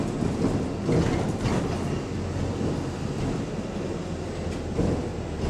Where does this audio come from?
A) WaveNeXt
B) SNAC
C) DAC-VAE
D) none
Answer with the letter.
D